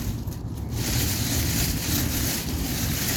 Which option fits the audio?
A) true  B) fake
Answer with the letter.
B